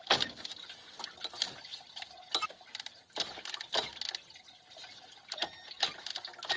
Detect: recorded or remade recorded